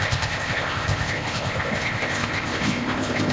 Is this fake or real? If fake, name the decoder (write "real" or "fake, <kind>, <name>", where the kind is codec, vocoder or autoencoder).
fake, codec, ZipCodec